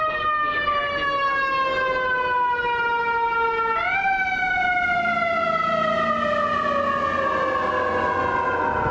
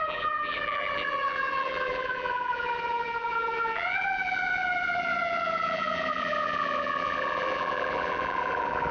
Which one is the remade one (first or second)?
second